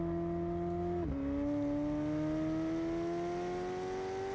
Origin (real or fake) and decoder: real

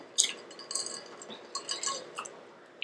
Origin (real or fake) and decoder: real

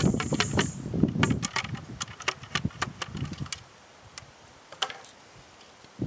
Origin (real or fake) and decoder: real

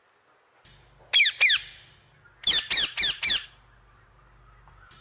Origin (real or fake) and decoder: real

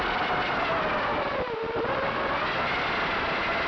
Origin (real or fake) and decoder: real